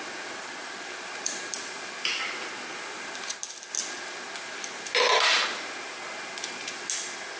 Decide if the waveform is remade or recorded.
recorded